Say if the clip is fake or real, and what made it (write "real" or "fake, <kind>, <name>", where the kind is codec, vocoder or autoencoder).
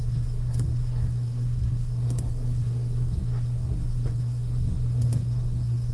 fake, codec, SNAC